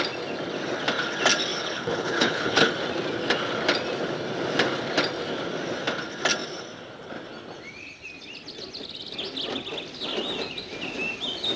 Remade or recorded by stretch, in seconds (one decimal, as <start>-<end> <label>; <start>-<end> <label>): 0.0-1.6 recorded; 1.6-2.7 remade; 2.7-11.6 recorded